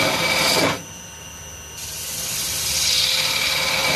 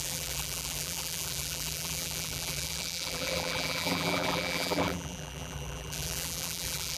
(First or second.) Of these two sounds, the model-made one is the second